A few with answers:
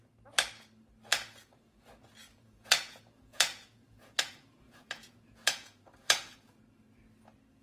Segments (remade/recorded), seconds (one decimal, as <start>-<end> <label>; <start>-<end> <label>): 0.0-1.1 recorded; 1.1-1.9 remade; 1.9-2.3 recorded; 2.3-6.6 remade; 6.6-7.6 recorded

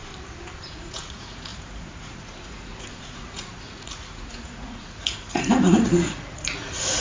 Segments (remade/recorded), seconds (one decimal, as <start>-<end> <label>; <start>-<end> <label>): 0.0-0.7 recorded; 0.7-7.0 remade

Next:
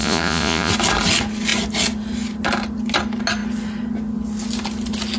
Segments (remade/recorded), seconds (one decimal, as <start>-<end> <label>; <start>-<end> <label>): 0.0-0.7 remade; 0.7-5.2 recorded